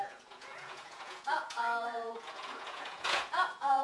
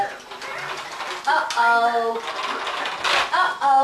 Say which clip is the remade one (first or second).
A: first